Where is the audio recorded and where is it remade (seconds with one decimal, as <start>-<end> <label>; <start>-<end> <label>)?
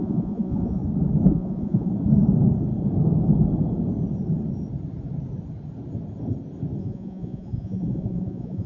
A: 0.0-0.8 remade; 0.8-1.3 recorded; 1.3-1.9 remade; 1.9-6.8 recorded; 6.8-8.7 remade